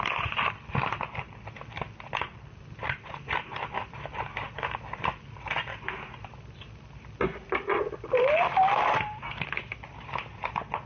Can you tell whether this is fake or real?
real